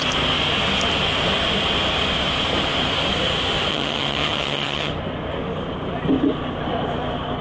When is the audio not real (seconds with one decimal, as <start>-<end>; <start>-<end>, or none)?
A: 3.7-4.9